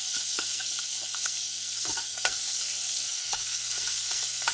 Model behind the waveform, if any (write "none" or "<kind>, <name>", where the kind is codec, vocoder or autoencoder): codec, SNAC